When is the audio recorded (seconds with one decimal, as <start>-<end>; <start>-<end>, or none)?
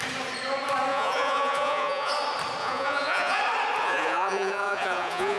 0.0-0.9; 2.1-2.6; 3.4-3.8